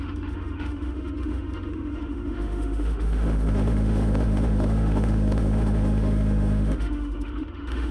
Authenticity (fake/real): fake